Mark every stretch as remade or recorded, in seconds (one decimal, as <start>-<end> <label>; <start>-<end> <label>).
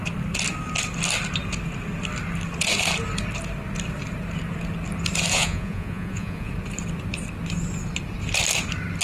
0.0-5.3 recorded; 5.3-6.5 remade; 6.5-9.0 recorded